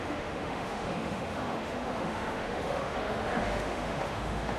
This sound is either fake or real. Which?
fake